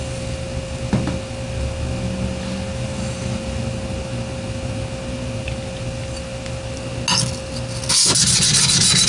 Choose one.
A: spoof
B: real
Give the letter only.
B